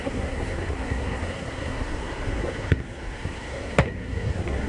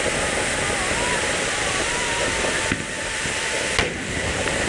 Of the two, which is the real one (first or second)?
second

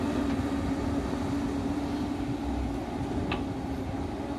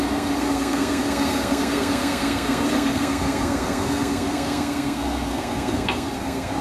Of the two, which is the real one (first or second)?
first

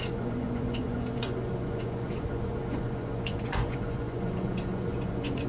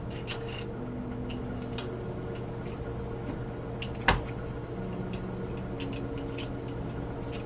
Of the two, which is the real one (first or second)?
second